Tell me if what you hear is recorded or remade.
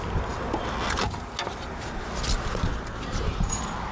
recorded